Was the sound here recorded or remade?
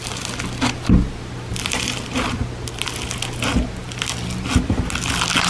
recorded